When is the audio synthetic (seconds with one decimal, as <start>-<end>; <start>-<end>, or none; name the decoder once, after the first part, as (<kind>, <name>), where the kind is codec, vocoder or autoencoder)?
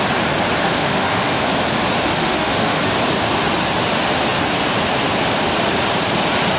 0.6-1.5 (autoencoder, DAC-VAE); 2.1-2.8